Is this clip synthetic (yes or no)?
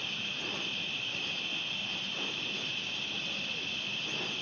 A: no